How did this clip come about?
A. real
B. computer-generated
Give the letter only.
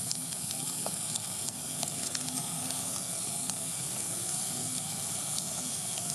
B